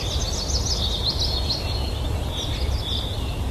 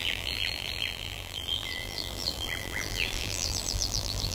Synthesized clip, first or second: second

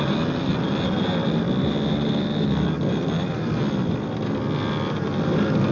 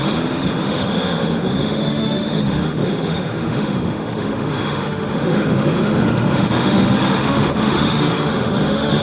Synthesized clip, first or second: second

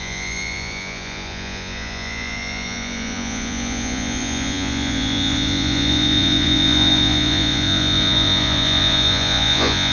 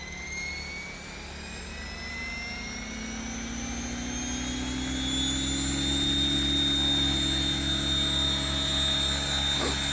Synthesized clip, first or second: first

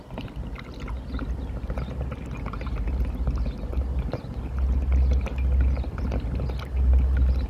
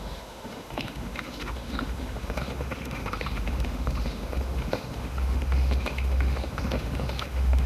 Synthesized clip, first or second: second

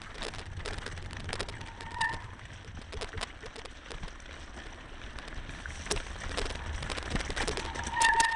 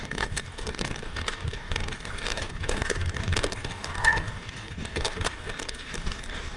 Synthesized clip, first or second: second